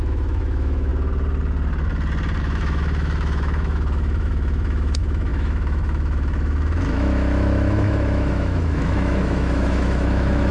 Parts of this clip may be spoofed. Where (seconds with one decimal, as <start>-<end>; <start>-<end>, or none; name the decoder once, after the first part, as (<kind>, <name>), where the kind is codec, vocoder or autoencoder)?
0.0-0.9 (autoencoder, DAC-VAE); 2.4-10.5

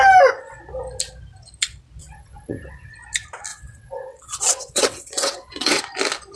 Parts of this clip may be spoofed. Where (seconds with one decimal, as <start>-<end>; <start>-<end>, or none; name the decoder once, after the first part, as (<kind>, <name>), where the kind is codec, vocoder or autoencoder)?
2.0-2.9 (vocoder, WaveNeXt); 3.5-5.8

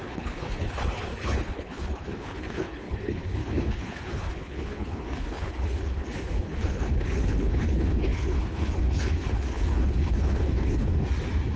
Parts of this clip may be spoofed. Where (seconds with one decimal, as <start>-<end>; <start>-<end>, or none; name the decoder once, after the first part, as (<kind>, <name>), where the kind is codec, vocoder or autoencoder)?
0.0-10.9 (codec, HILCodec)